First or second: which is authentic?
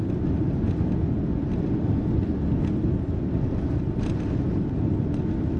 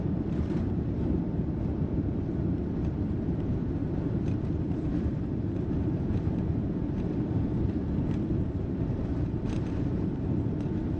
first